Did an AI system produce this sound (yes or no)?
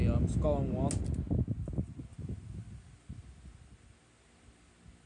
no